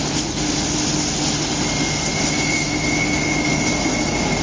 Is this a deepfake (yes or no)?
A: no